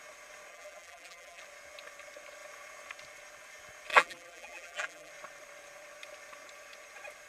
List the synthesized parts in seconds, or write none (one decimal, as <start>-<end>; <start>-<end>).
0.5-1.4; 3.9-5.1